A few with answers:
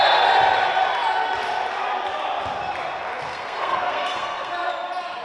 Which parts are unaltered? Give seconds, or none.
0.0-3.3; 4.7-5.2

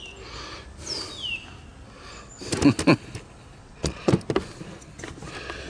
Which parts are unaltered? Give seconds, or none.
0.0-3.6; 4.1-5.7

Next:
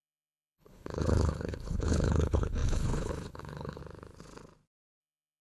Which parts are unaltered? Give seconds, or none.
3.8-5.0

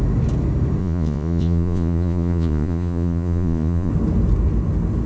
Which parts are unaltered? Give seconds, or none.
0.0-0.8; 3.9-5.1

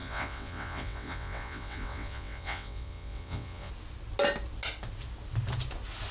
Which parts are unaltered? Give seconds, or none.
3.7-6.1